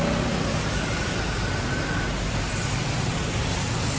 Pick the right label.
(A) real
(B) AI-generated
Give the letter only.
A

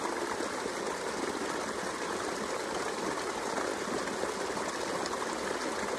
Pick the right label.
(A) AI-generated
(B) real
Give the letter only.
B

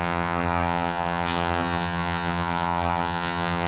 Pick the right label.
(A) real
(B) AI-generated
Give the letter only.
B